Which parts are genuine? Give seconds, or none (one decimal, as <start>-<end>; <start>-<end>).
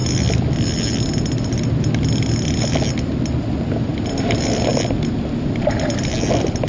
0.0-6.7